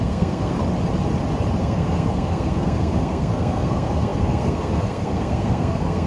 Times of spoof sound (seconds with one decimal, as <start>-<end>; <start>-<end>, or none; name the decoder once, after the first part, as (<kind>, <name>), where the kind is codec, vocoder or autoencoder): 0.0-0.6 (codec, SNAC); 1.6-6.1